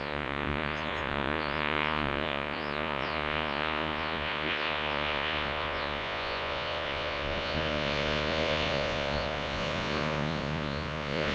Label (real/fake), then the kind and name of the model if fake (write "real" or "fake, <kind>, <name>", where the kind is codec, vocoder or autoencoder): fake, vocoder, Vocos